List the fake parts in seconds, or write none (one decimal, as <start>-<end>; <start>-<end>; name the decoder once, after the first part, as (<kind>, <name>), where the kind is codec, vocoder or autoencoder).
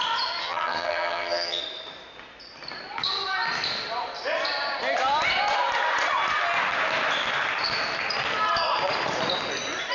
0.4-1.6 (vocoder, HiFi-GAN)